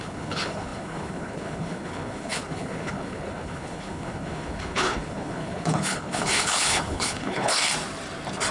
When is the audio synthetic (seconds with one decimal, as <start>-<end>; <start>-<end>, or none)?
0.0-7.6